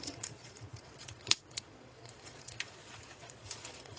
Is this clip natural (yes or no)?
no